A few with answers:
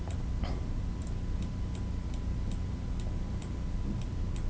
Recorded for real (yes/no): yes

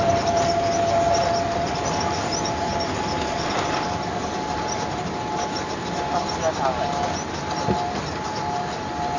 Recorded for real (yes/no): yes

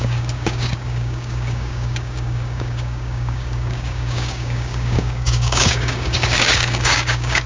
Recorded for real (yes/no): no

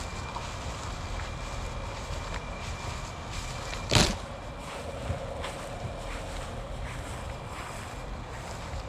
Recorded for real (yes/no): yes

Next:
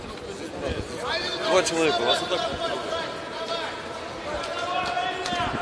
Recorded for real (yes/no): yes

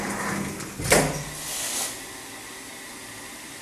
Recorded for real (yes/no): yes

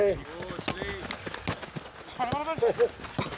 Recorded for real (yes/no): yes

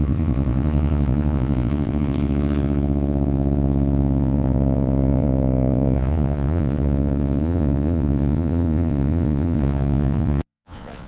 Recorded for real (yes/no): no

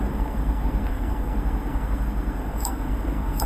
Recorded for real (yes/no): no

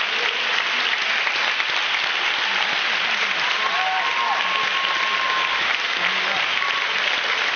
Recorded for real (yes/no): yes